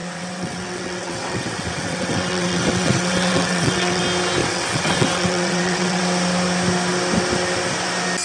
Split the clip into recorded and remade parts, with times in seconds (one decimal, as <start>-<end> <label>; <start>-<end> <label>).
0.0-4.0 remade; 4.0-4.4 recorded; 4.4-6.0 remade; 6.0-8.2 recorded

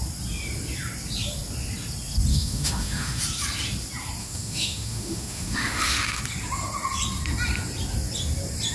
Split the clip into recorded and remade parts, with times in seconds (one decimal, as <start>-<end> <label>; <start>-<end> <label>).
0.0-2.3 recorded; 2.3-3.2 remade; 3.2-4.2 recorded; 4.2-6.2 remade; 6.2-8.7 recorded

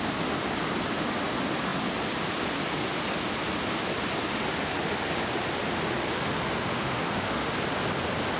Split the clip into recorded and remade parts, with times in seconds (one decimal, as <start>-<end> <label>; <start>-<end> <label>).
0.0-6.7 recorded; 6.7-7.5 remade; 7.5-8.4 recorded

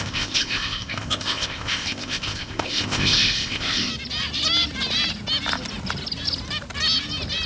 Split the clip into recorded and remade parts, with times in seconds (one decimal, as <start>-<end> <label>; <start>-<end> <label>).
0.0-3.9 remade; 3.9-7.5 recorded

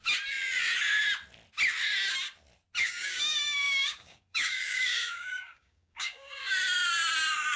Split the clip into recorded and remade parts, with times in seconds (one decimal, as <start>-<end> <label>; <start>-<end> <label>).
0.0-2.8 recorded; 2.8-6.4 remade; 6.4-7.6 recorded